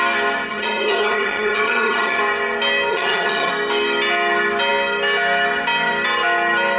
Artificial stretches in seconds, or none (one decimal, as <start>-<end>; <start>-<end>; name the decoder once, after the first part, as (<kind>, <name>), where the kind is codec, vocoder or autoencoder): 0.5-2.2 (vocoder, HiFi-GAN); 2.9-3.5